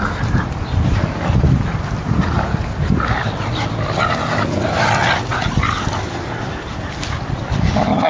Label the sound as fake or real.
real